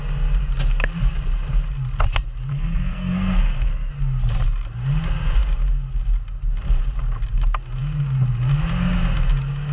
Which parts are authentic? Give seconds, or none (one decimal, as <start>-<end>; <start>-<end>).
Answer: 0.0-2.5; 3.9-9.7